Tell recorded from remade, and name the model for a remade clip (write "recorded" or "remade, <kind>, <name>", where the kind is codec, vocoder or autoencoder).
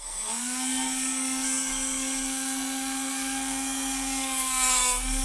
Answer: remade, codec, SNAC